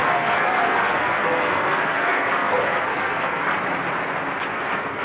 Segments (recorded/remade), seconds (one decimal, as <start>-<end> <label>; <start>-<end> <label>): 0.0-3.5 remade; 3.5-4.5 recorded; 4.5-5.0 remade